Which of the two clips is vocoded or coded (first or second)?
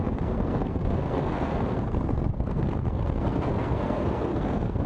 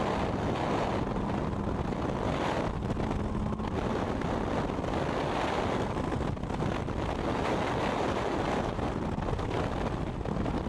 first